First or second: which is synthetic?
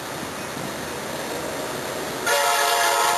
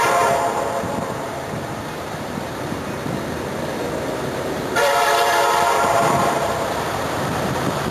second